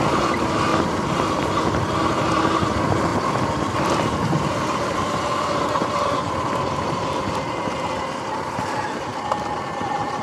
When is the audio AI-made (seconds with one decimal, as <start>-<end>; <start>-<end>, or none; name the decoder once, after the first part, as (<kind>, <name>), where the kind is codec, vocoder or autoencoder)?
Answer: none